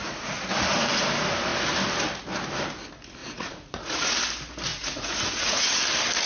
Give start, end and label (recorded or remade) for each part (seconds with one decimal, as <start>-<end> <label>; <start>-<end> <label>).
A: 0.0-3.2 recorded; 3.2-4.1 remade; 4.1-4.7 recorded; 4.7-5.8 remade; 5.8-6.3 recorded